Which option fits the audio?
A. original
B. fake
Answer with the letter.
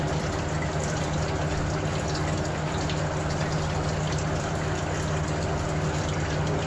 A